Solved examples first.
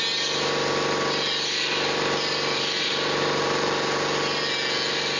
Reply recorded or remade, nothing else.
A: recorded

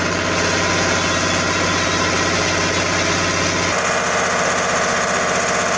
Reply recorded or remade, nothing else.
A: recorded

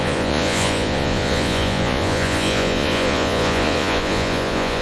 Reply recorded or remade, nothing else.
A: remade